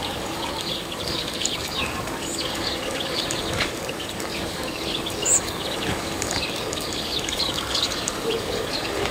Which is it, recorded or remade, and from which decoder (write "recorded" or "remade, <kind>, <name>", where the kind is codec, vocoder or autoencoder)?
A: remade, codec, DAC